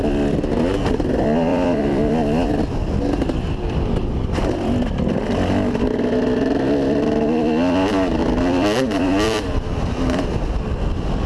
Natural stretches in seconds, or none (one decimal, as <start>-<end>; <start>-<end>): 0.0-1.5; 2.1-8.2; 10.6-11.3